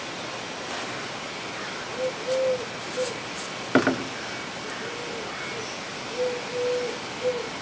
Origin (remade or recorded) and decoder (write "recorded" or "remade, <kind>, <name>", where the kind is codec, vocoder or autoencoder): recorded